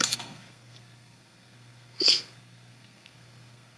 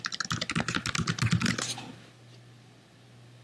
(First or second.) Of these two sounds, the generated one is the first